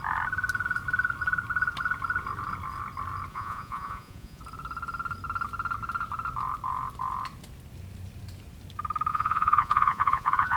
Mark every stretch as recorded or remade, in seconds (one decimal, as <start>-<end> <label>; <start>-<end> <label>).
0.0-3.3 recorded; 3.3-4.4 remade; 4.4-9.1 recorded; 9.1-10.6 remade